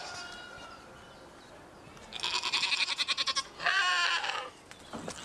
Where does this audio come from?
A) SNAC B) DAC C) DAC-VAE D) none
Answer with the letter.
D